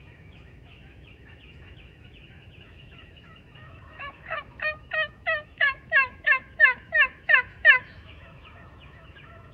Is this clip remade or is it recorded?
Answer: remade